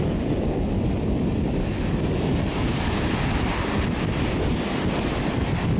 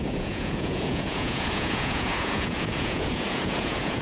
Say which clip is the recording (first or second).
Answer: first